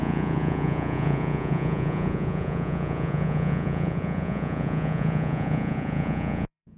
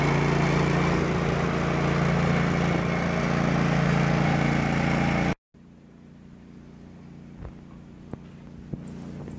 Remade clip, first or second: first